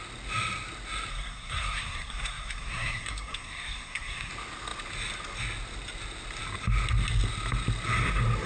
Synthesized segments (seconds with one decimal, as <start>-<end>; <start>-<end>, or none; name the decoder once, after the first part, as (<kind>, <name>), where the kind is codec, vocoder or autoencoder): 1.1-4.3 (codec, SNAC)